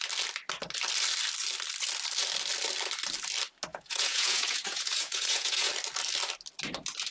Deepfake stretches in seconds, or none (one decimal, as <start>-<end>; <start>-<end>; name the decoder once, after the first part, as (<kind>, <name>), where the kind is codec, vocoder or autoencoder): 3.7-5.7 (vocoder, Vocos)